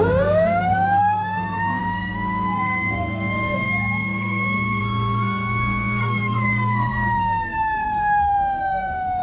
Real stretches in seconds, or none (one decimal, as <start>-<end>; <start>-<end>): none